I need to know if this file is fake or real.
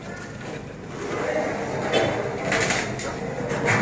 real